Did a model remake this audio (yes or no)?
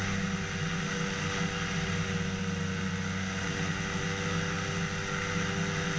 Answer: no